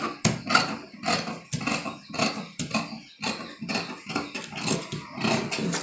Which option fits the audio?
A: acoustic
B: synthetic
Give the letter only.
A